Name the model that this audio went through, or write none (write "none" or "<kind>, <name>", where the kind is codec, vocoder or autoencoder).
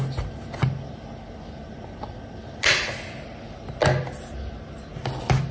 none